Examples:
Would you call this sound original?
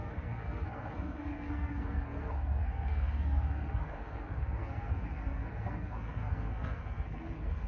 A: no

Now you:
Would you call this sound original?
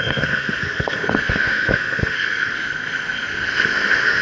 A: no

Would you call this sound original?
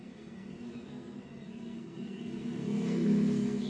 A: no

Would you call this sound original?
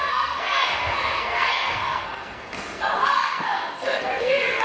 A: no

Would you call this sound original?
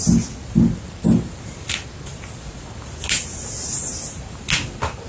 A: yes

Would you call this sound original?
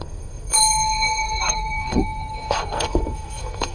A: no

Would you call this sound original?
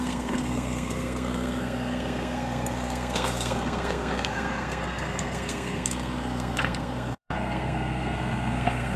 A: no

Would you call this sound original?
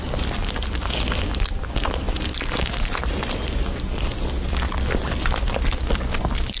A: yes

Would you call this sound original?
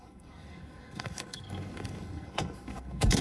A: no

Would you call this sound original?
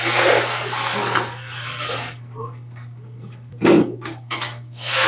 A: no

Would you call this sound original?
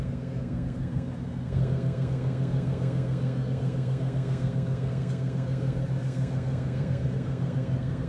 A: no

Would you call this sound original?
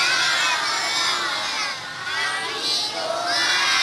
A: yes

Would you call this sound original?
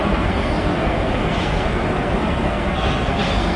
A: no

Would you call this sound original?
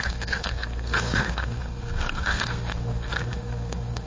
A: no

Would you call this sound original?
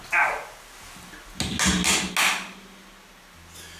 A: yes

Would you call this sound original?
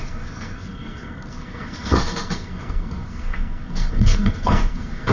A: no